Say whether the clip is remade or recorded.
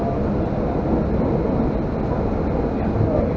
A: recorded